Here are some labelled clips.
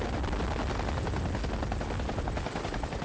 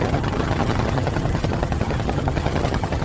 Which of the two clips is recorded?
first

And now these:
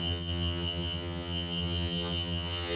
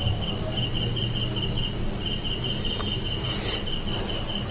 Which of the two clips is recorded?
second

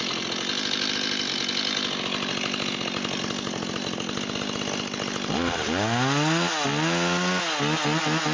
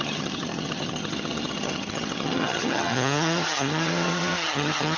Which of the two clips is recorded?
first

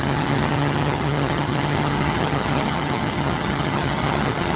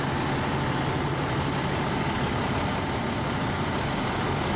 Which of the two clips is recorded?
second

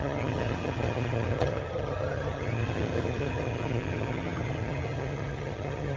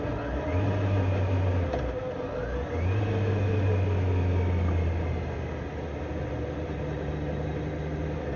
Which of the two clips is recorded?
second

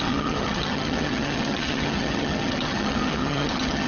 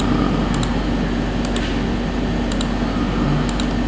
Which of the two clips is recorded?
second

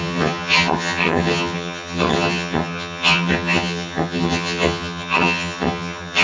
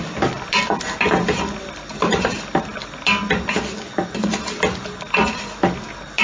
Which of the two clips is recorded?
second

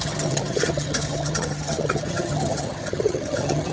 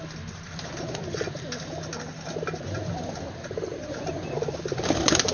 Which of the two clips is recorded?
second